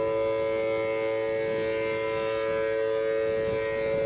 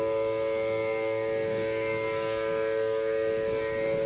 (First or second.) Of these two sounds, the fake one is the second